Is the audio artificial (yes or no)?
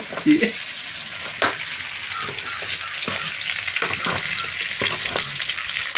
no